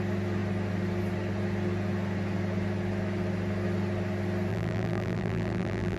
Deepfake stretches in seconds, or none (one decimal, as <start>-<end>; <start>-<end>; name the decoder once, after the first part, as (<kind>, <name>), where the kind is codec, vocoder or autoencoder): 4.5-6.0 (vocoder, BigVGAN v2)